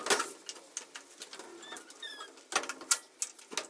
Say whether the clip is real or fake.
real